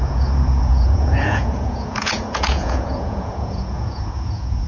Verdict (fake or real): fake